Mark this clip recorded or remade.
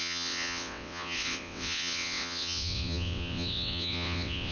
remade